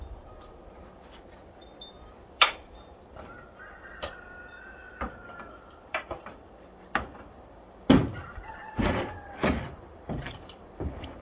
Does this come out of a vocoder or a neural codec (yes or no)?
yes